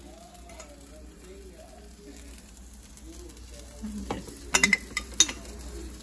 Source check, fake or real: real